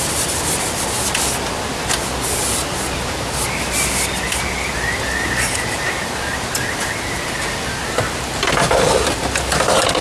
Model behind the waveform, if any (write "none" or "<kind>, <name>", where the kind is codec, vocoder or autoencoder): none